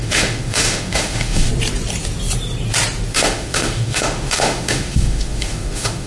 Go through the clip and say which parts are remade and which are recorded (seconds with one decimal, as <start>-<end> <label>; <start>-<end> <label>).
0.0-1.5 remade; 1.5-3.1 recorded; 3.1-6.1 remade